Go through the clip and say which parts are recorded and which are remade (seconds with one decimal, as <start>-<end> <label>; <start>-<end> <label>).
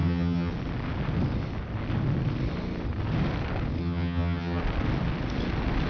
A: 0.0-0.5 remade; 0.5-3.8 recorded; 3.8-4.6 remade; 4.6-5.9 recorded